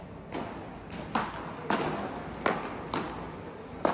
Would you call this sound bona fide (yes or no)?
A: yes